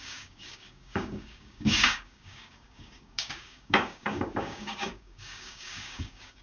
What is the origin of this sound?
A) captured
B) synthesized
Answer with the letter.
B